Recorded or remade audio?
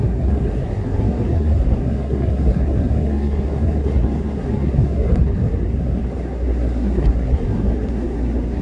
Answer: remade